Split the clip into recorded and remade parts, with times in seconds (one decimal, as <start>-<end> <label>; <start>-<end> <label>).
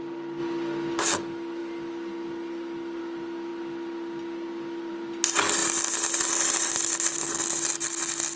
0.0-8.4 recorded